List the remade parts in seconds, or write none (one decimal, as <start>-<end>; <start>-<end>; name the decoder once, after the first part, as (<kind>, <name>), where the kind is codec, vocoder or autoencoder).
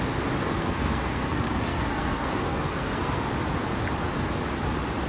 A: 0.5-3.2 (codec, SNAC)